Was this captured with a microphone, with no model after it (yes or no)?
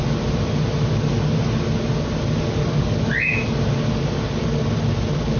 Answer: yes